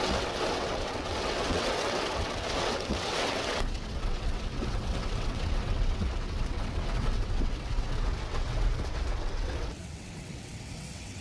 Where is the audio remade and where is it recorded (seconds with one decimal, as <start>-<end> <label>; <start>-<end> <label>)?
0.0-11.2 remade